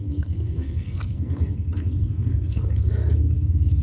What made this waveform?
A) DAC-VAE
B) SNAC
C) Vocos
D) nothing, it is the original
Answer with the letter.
B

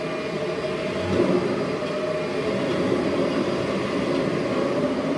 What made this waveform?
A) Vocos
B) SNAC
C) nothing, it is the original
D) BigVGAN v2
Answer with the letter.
C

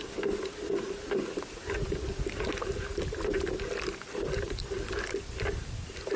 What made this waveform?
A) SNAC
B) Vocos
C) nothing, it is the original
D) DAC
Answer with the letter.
C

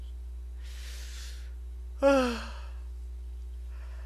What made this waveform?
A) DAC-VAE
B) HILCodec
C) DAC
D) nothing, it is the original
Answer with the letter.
D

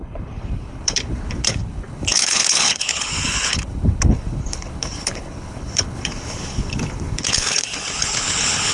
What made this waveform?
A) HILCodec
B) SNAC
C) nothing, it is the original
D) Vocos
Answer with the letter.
A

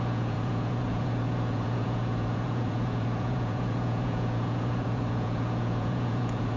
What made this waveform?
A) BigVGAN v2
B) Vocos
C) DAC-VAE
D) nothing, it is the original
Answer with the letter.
B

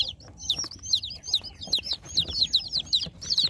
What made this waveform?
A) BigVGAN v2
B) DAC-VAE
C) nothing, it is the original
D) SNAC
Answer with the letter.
A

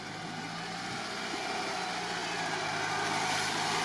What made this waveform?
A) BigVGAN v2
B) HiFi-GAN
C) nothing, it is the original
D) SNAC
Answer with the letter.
C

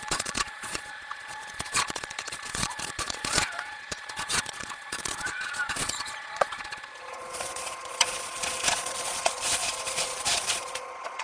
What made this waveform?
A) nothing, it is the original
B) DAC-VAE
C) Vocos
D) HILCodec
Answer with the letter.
C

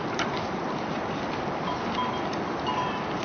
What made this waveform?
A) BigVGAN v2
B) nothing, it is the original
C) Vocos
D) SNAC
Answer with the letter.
B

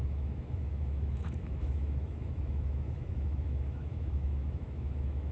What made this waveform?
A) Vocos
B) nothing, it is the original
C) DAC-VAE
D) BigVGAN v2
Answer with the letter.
C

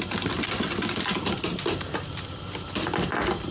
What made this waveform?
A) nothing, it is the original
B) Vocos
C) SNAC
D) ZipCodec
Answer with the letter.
A